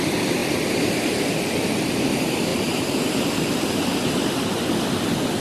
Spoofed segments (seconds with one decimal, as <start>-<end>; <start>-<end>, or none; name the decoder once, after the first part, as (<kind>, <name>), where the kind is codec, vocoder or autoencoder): 0.4-1.7 (vocoder, BigVGAN v2); 2.5-3.7